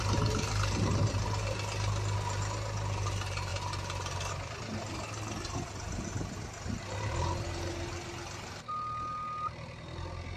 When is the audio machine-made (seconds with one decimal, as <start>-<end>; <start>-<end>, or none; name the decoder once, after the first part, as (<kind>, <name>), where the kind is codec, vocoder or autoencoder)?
none